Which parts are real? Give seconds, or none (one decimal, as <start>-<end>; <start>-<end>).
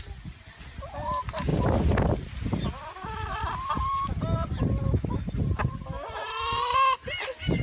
0.0-7.6